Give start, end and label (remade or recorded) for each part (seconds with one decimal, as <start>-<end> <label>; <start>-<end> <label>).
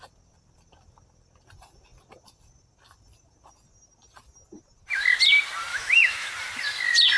0.0-5.7 recorded; 5.7-6.3 remade; 6.3-7.2 recorded